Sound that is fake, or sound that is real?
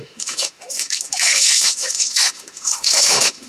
fake